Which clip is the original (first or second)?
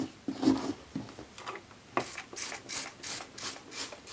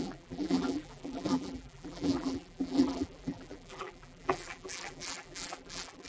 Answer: first